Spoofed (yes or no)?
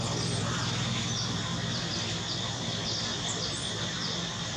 no